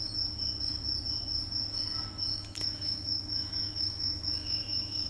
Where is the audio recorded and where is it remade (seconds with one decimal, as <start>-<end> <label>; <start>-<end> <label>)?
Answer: 0.0-2.3 recorded; 2.3-5.1 remade